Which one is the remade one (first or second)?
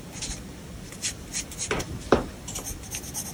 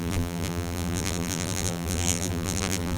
second